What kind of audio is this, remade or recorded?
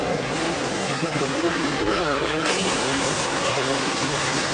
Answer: remade